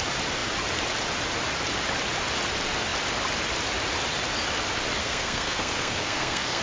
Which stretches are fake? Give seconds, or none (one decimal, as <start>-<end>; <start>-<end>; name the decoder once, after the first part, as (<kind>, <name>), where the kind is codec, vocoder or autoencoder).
5.0-6.6 (codec, SNAC)